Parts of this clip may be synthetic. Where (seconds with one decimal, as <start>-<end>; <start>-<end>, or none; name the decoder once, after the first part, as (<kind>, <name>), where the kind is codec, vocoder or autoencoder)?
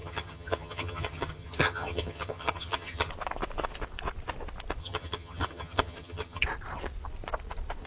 0.0-3.1 (vocoder, HiFi-GAN); 4.8-6.4